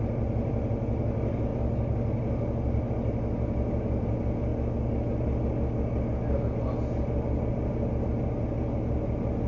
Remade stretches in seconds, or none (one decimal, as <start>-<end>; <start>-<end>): none